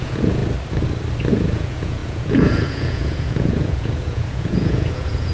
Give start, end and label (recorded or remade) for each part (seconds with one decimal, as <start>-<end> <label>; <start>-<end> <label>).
0.0-0.4 remade; 0.4-1.3 recorded; 1.3-5.3 remade